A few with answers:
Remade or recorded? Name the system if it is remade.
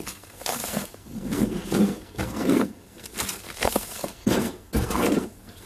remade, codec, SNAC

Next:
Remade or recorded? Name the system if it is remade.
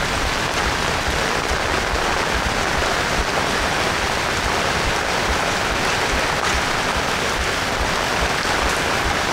recorded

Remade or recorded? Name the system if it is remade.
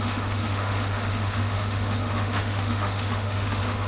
remade, autoencoder, DAC-VAE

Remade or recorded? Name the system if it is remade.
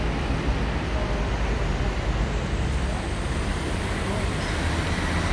recorded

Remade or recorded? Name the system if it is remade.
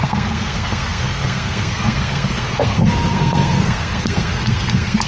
remade, codec, SNAC